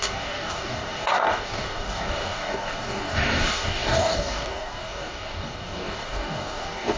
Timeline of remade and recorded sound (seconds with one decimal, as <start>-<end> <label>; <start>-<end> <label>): 0.0-7.0 remade

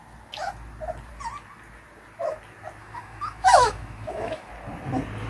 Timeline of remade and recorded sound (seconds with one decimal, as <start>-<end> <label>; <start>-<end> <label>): 0.0-2.8 recorded; 2.8-4.5 remade; 4.5-5.3 recorded